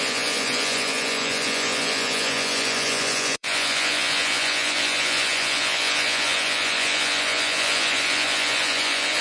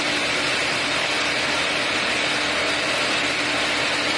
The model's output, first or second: first